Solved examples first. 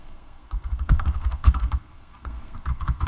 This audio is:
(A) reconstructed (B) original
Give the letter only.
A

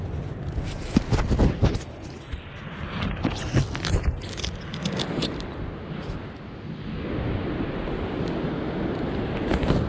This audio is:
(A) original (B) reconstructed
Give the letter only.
A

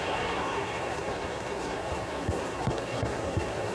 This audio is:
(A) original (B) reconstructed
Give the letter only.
B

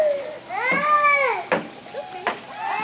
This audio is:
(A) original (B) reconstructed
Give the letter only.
A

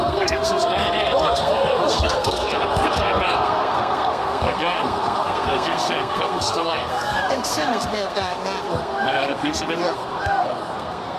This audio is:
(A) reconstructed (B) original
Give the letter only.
A